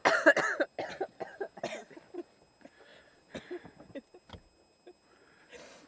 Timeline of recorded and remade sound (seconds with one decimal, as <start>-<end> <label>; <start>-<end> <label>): 0.0-5.9 recorded